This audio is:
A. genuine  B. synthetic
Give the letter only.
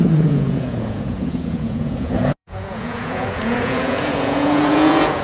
B